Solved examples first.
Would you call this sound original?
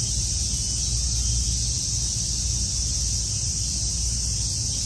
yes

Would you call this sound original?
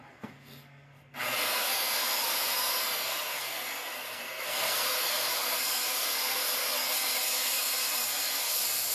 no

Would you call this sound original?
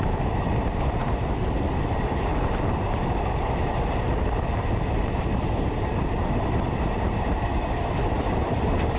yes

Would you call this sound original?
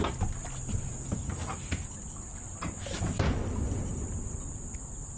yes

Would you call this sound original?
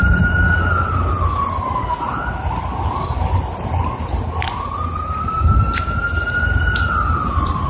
yes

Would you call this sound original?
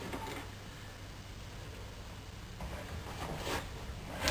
yes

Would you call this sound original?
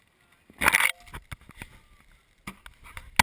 yes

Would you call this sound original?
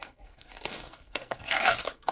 no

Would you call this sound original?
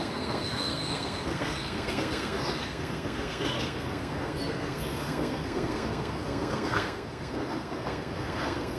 no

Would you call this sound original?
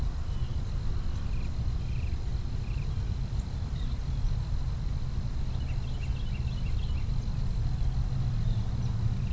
yes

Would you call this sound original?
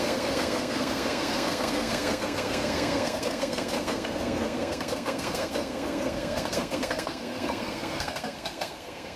no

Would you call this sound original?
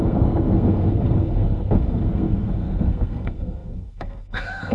no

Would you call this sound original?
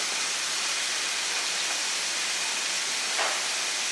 yes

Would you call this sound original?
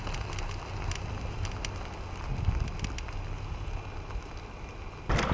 yes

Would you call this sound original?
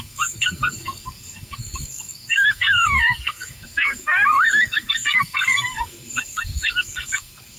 no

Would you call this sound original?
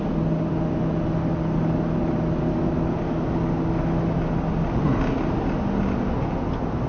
yes